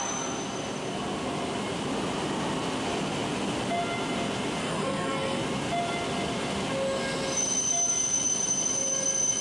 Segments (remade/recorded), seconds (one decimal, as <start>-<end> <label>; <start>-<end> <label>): 0.0-4.6 recorded; 4.6-5.4 remade; 5.4-9.4 recorded